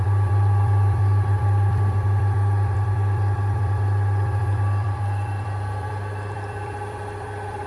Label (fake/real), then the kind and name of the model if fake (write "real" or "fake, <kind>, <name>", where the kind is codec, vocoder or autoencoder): fake, vocoder, BigVGAN v2